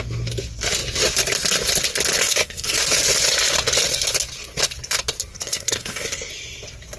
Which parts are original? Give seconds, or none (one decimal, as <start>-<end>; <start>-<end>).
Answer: 0.0-2.2; 2.8-5.3; 6.3-7.0